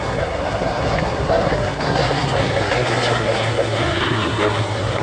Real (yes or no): no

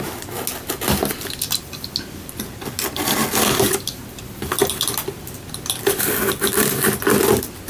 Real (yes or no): yes